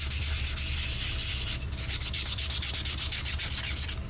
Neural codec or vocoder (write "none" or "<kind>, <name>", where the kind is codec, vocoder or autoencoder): none